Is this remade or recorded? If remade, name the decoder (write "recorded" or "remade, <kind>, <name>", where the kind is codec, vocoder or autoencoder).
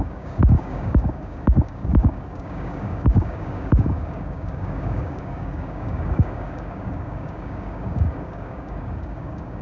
remade, codec, DAC